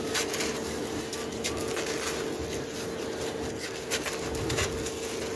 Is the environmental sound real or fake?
real